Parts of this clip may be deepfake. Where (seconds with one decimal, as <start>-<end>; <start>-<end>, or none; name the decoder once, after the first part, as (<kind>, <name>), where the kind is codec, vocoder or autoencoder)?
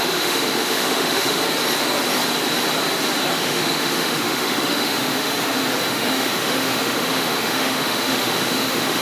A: 0.0-1.4 (autoencoder, DAC-VAE); 3.3-5.3; 5.9-9.0